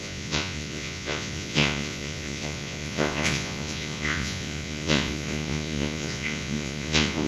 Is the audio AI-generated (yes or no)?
yes